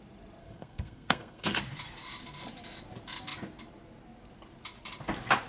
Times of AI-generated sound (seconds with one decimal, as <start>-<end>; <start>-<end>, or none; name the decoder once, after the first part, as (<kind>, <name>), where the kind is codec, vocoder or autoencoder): 0.4-1.6 (codec, SNAC)